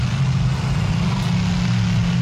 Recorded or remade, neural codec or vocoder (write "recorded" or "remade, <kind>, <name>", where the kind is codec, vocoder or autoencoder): recorded